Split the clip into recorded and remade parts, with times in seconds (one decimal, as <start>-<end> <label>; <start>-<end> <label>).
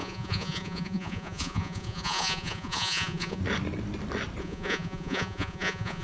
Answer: 0.0-3.4 remade; 3.4-4.4 recorded; 4.4-6.0 remade